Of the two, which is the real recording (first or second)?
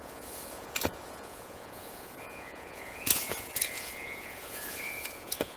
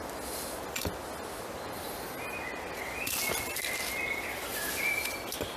second